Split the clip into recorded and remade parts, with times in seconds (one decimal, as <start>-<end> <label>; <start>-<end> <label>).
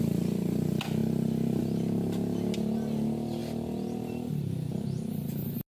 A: 0.0-5.7 recorded